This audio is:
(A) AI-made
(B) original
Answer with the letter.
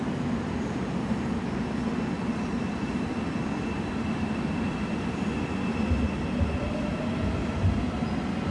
B